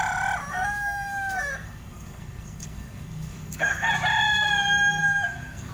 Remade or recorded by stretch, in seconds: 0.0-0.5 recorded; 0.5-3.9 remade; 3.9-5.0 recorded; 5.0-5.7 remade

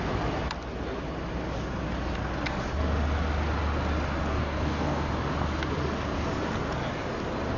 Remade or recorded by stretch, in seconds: 0.0-4.3 recorded; 4.3-5.1 remade; 5.1-7.6 recorded